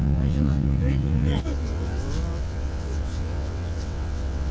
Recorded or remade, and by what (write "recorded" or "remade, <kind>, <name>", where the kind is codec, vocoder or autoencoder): remade, vocoder, WaveNeXt